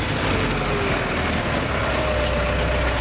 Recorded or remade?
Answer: recorded